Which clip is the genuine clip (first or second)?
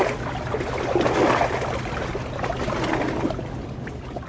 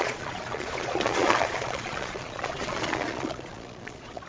first